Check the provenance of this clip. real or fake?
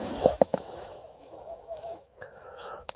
fake